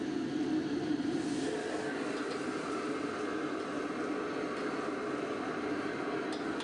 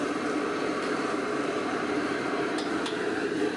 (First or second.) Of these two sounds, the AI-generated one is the second